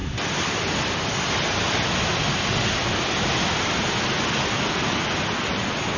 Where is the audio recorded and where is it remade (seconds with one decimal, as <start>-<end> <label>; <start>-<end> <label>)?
0.0-6.0 recorded